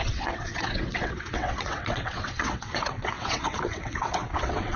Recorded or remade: remade